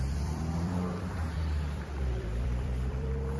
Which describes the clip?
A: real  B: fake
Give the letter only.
B